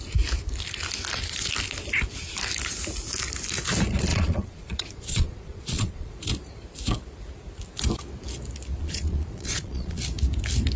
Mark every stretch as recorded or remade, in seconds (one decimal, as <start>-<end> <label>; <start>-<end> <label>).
0.0-4.1 recorded; 4.1-6.3 remade; 6.3-8.8 recorded; 8.8-10.0 remade; 10.0-10.8 recorded